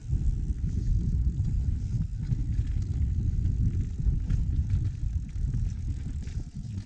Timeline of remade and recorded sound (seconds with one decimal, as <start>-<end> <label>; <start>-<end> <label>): 0.0-6.9 recorded